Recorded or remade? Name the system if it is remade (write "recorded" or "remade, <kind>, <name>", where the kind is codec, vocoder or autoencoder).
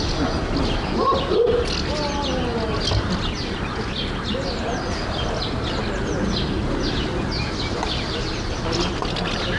recorded